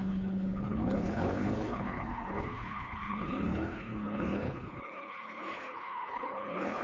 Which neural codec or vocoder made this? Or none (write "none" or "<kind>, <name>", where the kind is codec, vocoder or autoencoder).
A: codec, HILCodec